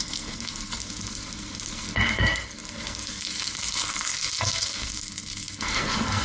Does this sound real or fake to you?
fake